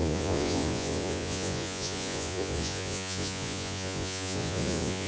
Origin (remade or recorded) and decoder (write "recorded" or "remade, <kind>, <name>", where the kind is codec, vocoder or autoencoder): remade, vocoder, Vocos